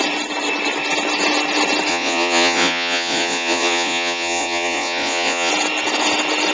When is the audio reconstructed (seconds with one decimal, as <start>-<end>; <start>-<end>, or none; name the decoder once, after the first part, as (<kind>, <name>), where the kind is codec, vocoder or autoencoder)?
1.9-5.5 (vocoder, Vocos)